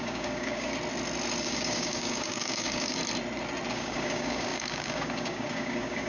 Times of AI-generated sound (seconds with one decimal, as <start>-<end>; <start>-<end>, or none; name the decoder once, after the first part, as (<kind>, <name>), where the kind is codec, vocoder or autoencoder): 0.0-0.7 (codec, DAC); 1.4-3.0; 3.7-6.1